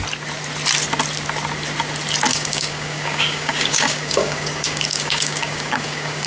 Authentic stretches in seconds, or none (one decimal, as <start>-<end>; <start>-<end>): 0.0-2.3